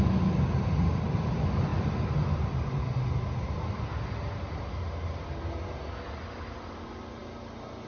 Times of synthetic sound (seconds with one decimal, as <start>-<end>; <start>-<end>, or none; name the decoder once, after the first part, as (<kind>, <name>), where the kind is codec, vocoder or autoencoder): none